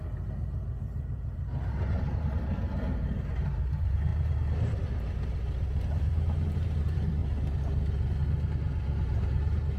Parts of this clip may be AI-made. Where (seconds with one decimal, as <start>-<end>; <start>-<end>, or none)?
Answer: 0.0-7.2; 8.9-9.8